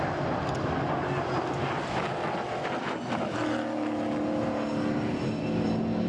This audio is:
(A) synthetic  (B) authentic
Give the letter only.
B